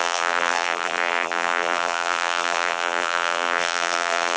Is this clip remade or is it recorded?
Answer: remade